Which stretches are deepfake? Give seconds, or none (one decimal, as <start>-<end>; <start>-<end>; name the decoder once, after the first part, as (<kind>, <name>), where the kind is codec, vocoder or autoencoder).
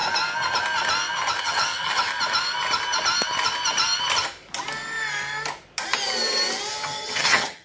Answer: 1.4-2.1 (vocoder, HiFi-GAN); 6.7-7.6